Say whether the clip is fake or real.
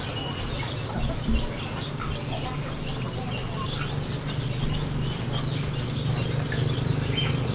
real